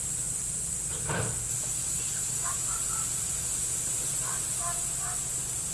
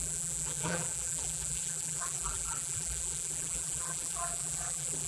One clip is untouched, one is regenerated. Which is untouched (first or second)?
first